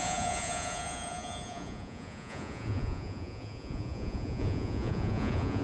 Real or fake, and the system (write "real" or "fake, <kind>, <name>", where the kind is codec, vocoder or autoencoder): fake, vocoder, Vocos